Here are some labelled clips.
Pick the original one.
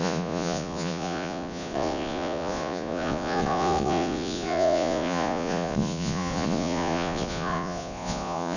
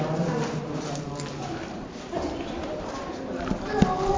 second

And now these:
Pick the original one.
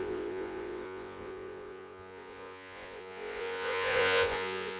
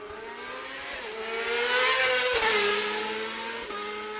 second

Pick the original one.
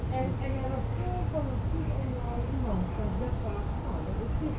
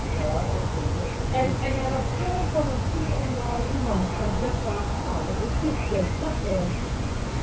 first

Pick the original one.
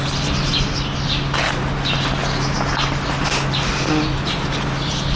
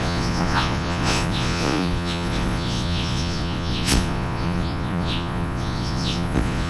first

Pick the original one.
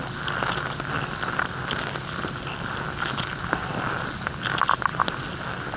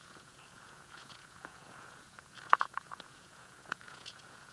first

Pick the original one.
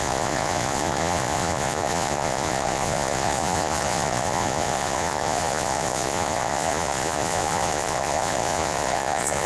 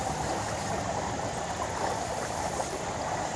second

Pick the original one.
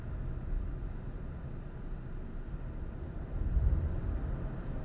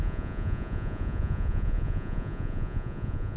first